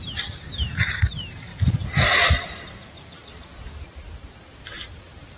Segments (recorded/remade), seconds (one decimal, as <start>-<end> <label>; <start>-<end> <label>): 0.0-5.4 remade